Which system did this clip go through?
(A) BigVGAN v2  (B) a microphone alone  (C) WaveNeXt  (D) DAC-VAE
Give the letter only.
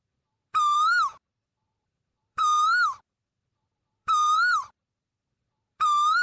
A